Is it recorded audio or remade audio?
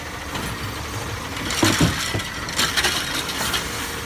recorded